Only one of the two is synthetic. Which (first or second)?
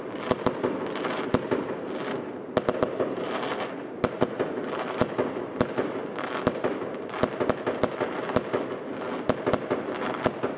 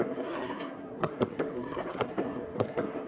second